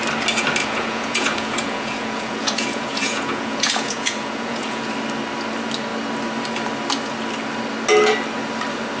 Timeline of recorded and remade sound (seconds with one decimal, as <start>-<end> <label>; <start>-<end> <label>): 0.0-0.6 recorded; 0.6-4.9 remade; 4.9-9.0 recorded